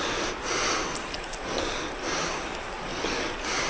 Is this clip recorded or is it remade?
recorded